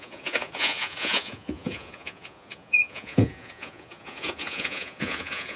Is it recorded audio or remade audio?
remade